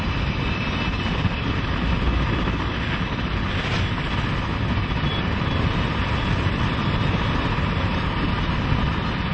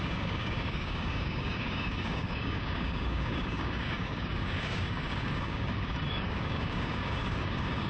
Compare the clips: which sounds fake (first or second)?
second